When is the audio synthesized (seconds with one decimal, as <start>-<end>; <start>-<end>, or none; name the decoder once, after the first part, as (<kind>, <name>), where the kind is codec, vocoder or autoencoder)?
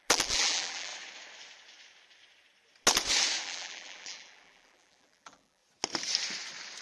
0.0-0.9 (vocoder, BigVGAN v2); 3.4-5.6